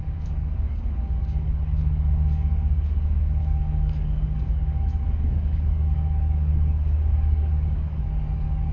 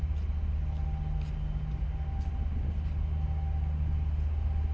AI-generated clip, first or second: first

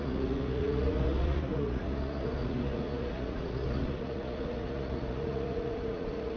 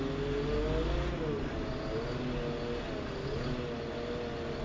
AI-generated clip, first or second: first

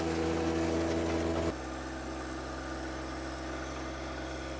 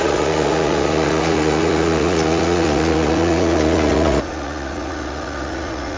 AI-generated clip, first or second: second